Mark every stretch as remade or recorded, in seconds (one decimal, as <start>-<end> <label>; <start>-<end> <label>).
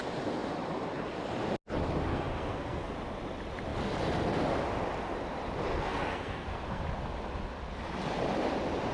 0.0-2.1 recorded; 2.1-2.9 remade; 2.9-5.7 recorded; 5.7-6.8 remade; 6.8-8.9 recorded